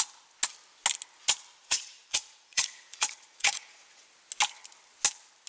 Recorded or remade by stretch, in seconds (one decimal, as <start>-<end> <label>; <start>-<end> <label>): 0.0-1.6 recorded; 1.6-4.1 remade; 4.1-5.5 recorded